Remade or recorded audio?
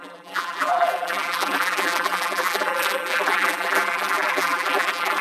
remade